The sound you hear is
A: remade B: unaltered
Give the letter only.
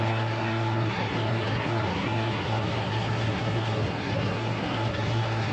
A